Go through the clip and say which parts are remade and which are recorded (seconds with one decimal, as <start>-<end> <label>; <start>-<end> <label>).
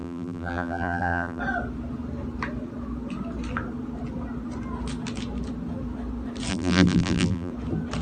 0.0-1.4 remade; 1.4-6.5 recorded; 6.5-7.5 remade; 7.5-8.0 recorded